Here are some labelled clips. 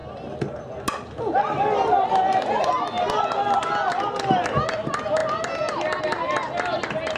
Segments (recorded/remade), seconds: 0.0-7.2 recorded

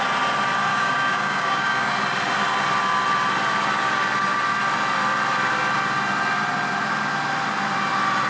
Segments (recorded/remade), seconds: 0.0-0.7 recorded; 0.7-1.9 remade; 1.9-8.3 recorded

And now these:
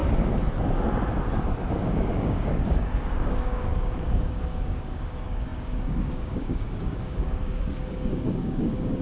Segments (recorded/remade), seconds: 0.0-1.7 recorded; 1.7-9.0 remade

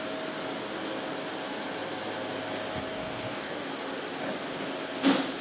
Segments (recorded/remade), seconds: 0.0-2.9 recorded; 2.9-3.7 remade; 3.7-5.4 recorded

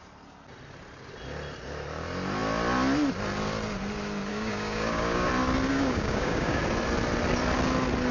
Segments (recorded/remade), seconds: 0.0-4.3 recorded; 4.3-5.3 remade; 5.3-5.7 recorded; 5.7-6.6 remade; 6.6-8.1 recorded